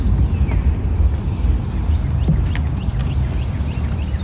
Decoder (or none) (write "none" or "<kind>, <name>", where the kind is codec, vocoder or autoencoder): none